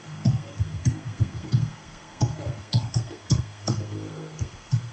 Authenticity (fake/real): fake